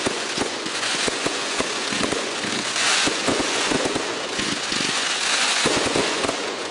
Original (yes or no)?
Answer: no